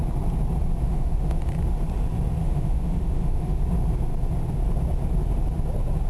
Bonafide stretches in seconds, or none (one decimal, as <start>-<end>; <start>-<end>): 0.0-0.8; 1.4-2.4; 3.6-6.1